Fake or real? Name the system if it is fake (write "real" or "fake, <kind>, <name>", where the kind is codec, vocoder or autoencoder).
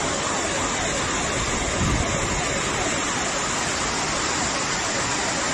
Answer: real